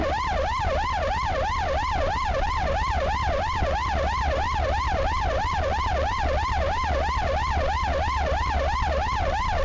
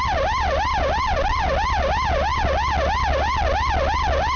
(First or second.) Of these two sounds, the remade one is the first